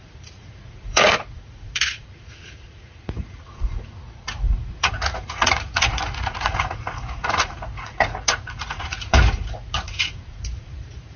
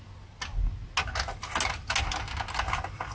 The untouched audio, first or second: second